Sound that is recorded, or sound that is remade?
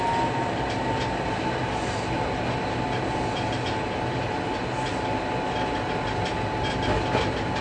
recorded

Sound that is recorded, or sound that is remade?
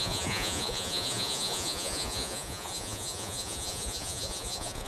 remade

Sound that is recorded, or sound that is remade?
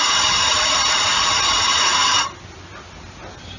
recorded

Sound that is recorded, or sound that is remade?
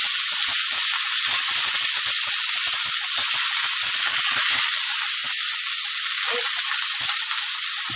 recorded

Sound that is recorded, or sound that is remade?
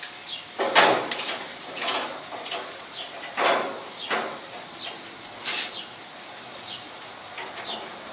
recorded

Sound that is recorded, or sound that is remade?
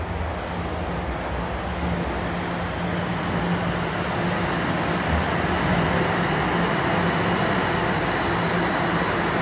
recorded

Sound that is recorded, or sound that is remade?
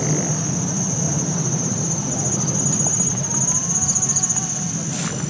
recorded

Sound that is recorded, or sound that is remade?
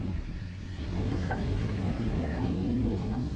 remade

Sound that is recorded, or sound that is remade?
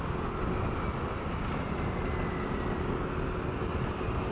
recorded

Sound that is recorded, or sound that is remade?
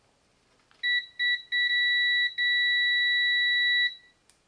recorded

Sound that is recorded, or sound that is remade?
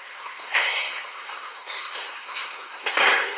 remade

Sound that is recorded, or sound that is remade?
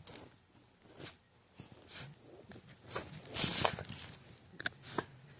recorded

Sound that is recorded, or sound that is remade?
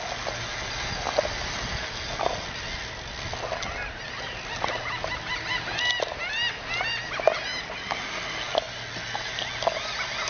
recorded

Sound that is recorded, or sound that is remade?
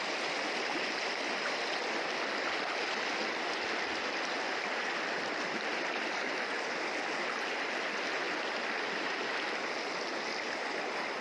recorded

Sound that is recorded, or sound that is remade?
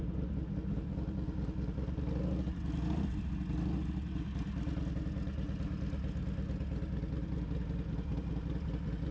recorded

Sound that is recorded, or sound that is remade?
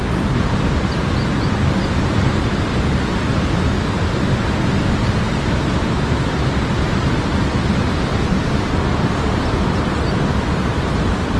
recorded